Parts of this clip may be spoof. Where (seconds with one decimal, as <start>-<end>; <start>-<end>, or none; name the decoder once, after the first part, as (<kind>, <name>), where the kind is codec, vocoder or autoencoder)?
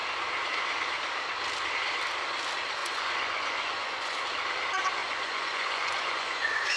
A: 2.8-4.2 (vocoder, Vocos); 5.0-6.8